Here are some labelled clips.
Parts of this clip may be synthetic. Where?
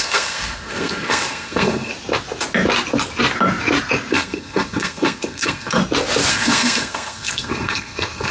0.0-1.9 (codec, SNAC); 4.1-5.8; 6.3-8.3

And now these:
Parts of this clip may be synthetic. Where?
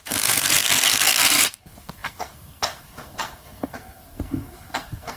0.0-5.2 (codec, SNAC)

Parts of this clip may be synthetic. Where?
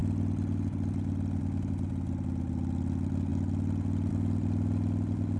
none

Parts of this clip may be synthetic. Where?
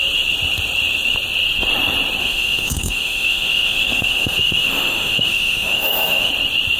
2.2-6.3 (autoencoder, DAC-VAE)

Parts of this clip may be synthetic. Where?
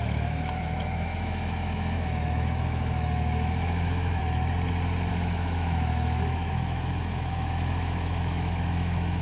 0.0-4.2 (autoencoder, DAC-VAE); 5.1-9.2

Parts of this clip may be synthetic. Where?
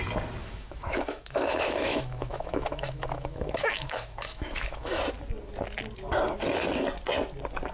0.4-5.0 (autoencoder, DAC-VAE)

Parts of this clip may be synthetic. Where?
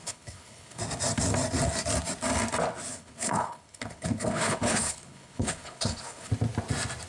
0.0-0.8 (codec, HILCodec); 2.9-6.3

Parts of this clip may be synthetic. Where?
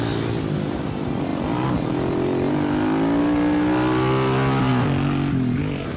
none